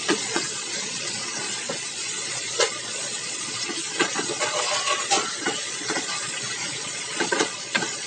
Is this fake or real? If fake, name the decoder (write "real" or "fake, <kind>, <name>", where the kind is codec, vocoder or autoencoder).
fake, vocoder, Vocos